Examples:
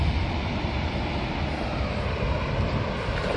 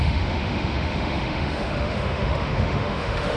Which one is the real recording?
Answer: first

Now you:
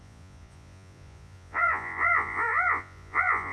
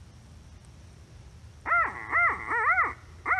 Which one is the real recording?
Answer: second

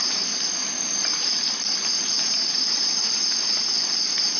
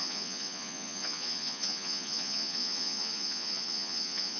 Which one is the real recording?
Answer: first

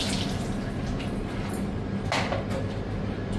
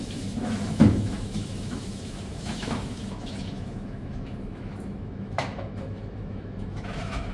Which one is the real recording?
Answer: first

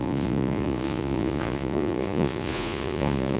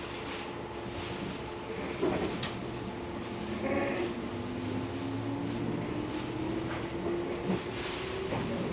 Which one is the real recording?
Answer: second